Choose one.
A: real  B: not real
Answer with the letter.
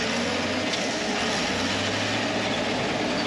A